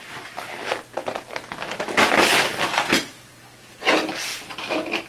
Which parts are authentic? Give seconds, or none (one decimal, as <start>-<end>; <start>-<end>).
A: 0.0-1.0; 3.7-5.1